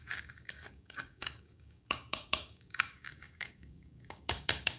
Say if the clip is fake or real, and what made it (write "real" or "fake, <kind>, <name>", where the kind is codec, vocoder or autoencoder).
fake, codec, DAC